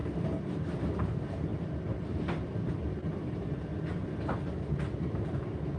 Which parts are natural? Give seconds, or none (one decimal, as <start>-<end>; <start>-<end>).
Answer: 1.5-2.3; 3.7-5.0